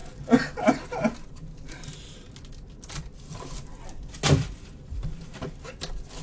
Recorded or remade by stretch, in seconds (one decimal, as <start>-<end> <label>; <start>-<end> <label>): 0.0-6.2 recorded